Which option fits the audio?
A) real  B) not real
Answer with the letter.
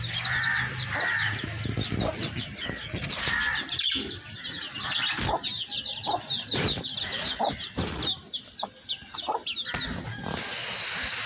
A